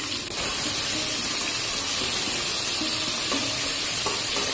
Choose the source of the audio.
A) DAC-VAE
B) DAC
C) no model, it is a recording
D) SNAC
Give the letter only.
C